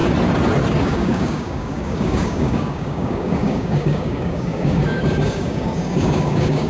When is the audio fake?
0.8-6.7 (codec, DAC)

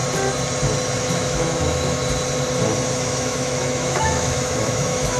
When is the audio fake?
1.0-2.0 (autoencoder, DAC-VAE); 2.9-5.2

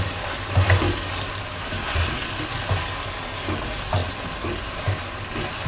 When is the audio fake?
1.8-2.4 (vocoder, WaveNeXt)

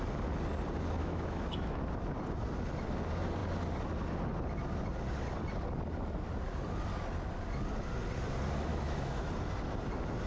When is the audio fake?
1.0-1.8 (autoencoder, DAC-VAE); 8.7-9.3

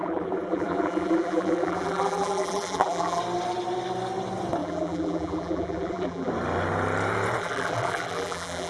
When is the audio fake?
0.0-3.2 (vocoder, BigVGAN v2); 4.6-6.3; 7.4-8.7